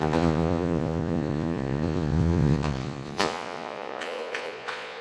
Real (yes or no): no